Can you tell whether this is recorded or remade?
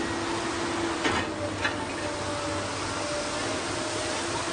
recorded